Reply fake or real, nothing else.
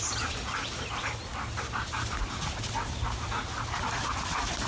real